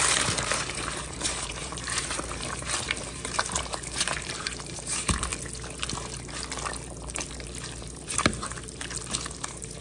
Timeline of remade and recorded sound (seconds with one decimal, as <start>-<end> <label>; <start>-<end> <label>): 0.0-5.3 remade; 5.3-7.8 recorded; 7.8-9.8 remade